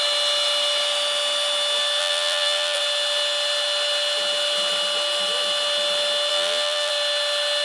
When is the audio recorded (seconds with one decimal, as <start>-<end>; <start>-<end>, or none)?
0.0-2.0; 2.8-6.3; 6.9-7.6